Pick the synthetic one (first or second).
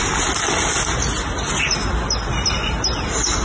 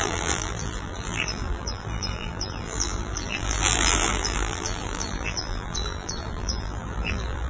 second